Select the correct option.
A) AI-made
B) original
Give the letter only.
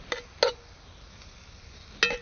B